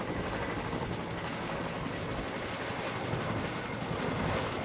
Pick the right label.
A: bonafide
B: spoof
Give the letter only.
A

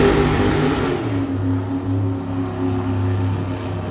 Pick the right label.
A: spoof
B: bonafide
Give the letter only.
B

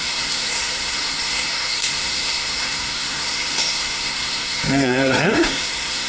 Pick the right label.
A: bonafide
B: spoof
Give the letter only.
B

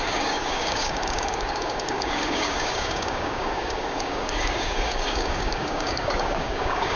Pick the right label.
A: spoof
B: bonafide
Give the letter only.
A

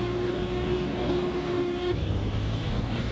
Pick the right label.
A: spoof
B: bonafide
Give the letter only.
A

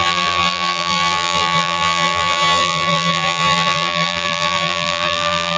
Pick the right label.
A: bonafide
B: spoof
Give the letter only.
B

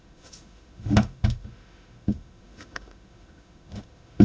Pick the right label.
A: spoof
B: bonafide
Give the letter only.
A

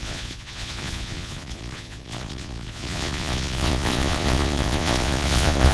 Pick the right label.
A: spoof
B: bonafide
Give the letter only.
A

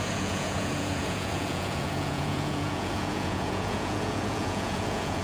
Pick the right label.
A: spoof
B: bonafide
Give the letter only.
A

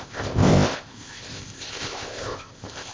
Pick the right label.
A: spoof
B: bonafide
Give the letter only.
A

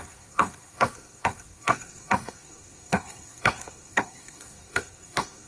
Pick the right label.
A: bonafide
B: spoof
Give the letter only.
B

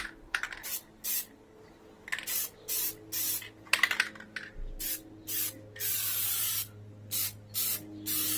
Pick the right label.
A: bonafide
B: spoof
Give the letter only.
A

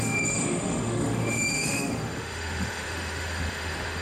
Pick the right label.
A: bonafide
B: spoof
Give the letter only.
B